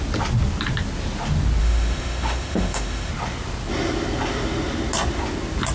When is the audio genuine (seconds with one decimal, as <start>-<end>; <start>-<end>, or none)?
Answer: 0.0-1.6; 3.1-5.7